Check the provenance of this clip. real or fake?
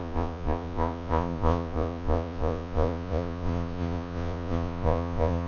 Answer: fake